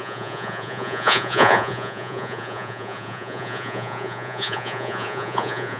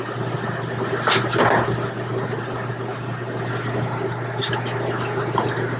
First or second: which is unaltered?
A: second